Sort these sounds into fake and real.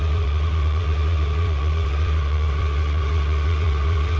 fake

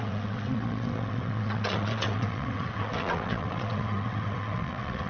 fake